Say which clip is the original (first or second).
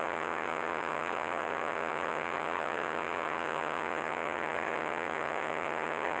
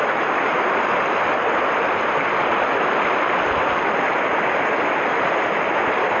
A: second